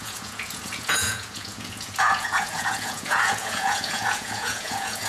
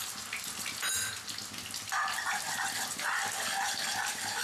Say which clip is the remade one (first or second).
first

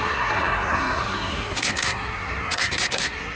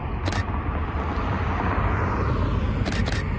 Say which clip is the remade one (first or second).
first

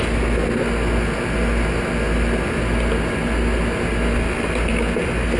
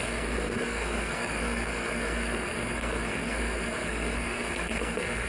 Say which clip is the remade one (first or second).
second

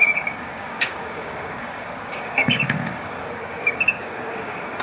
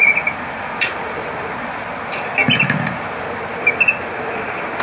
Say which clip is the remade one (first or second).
first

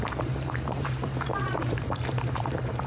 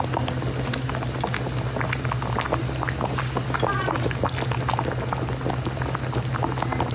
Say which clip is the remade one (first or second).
first